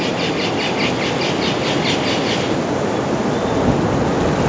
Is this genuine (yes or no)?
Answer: yes